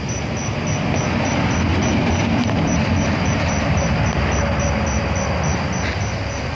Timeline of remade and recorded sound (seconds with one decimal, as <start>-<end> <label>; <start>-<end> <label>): 0.0-1.7 recorded; 1.7-3.4 remade; 3.4-6.5 recorded